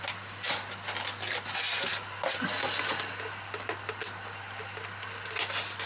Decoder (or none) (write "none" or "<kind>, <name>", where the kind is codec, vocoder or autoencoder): none